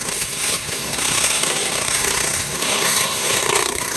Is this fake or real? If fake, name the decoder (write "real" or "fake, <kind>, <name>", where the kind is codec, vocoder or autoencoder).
fake, codec, SNAC